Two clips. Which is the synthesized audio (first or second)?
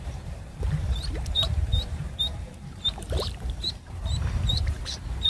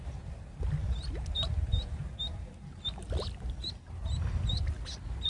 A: first